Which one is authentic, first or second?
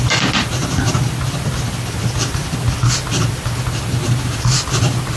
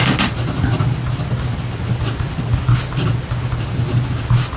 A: second